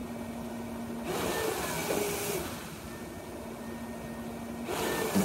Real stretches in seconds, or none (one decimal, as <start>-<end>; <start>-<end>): 0.0-5.2